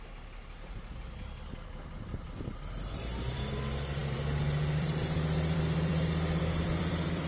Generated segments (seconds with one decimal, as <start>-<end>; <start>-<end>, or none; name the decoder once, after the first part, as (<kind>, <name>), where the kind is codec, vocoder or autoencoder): 4.0-7.3 (vocoder, BigVGAN v2)